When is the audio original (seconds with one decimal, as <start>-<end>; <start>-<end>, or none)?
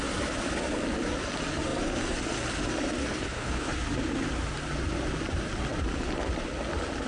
0.0-3.1; 3.7-7.1